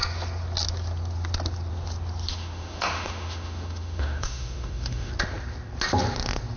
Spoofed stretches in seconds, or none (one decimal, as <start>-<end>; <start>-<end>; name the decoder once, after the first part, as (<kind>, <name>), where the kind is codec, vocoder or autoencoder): 2.3-5.1 (autoencoder, DAC-VAE)